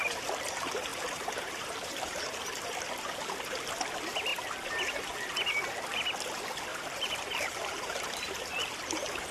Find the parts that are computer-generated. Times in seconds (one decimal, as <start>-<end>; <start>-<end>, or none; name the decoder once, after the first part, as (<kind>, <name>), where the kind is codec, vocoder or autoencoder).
0.9-2.6 (vocoder, BigVGAN v2); 6.7-8.3